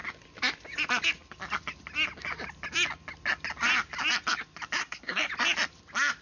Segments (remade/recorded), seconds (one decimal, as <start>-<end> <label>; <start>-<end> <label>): 0.0-4.8 recorded; 4.8-5.3 remade; 5.3-6.2 recorded